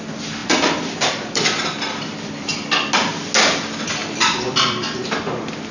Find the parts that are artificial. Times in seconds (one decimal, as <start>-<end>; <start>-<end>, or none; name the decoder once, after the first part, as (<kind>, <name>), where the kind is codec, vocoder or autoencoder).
0.4-2.9 (vocoder, BigVGAN v2); 4.0-5.2